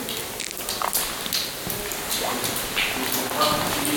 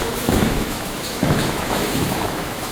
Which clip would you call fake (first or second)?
second